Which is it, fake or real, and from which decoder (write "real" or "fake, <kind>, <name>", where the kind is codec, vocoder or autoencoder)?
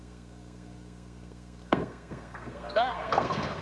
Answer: fake, codec, SNAC